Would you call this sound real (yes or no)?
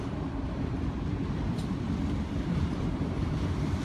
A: no